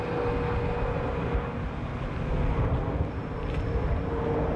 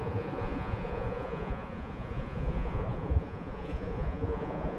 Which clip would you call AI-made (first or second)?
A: second